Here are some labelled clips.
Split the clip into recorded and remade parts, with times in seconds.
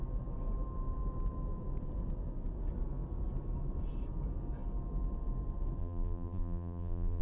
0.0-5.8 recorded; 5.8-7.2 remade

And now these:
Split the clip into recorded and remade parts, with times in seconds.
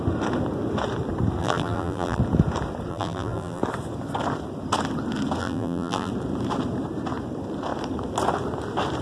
0.0-1.4 recorded; 1.4-2.2 remade; 2.2-2.9 recorded; 2.9-3.6 remade; 3.6-5.4 recorded; 5.4-6.1 remade; 6.1-9.0 recorded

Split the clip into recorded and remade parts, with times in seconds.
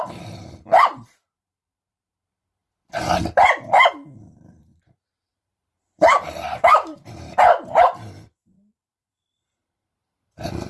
0.0-2.6 remade; 2.6-3.9 recorded; 3.9-10.7 remade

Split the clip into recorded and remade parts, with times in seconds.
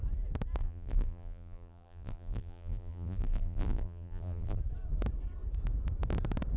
0.0-0.6 recorded; 0.6-4.6 remade; 4.6-6.6 recorded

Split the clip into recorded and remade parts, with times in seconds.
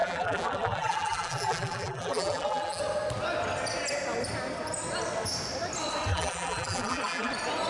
0.0-2.8 remade; 2.8-6.1 recorded; 6.1-7.3 remade; 7.3-7.7 recorded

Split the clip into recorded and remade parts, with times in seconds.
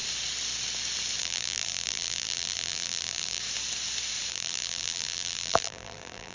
0.0-1.2 recorded; 1.2-3.4 remade; 3.4-4.3 recorded; 4.3-6.3 remade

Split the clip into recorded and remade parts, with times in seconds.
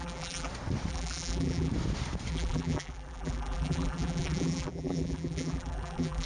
0.0-0.5 remade; 0.5-0.9 recorded; 0.9-1.7 remade; 1.7-2.3 recorded; 2.3-6.3 remade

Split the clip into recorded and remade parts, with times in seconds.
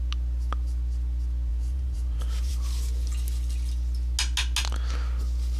0.0-1.5 recorded; 1.5-2.5 remade; 2.5-5.6 recorded